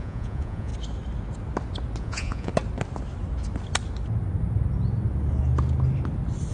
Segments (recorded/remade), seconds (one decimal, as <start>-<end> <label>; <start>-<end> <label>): 0.0-0.7 remade; 0.7-2.0 recorded; 2.0-2.5 remade; 2.5-6.5 recorded